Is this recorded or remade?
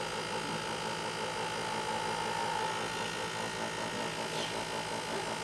recorded